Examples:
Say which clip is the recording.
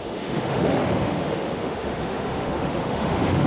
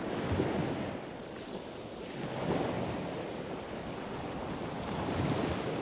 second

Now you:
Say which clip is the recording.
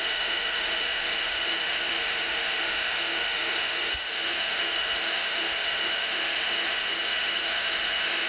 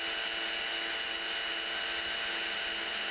second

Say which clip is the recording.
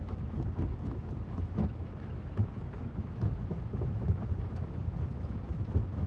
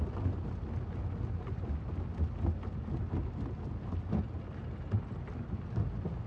second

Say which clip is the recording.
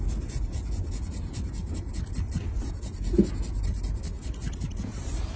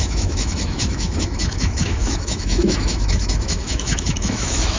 first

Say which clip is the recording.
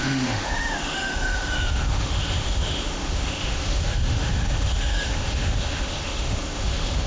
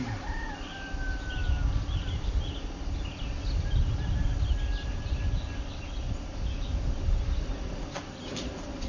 second